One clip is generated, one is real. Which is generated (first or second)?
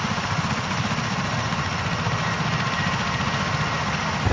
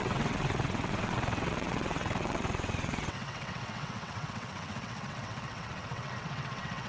second